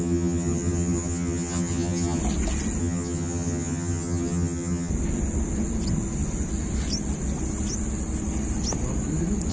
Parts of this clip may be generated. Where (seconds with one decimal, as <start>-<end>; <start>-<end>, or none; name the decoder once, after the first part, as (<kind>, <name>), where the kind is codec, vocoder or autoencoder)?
0.0-2.2 (vocoder, HiFi-GAN); 2.8-4.9